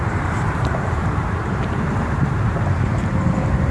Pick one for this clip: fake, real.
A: fake